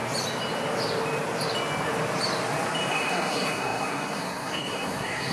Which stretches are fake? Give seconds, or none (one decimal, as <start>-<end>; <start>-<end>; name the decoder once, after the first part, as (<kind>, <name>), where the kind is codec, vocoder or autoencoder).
2.9-5.3 (codec, SNAC)